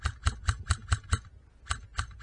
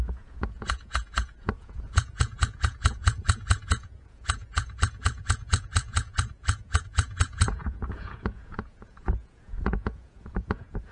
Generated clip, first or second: second